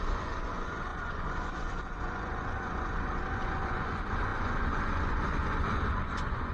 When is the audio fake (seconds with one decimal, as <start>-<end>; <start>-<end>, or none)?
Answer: 0.0-6.5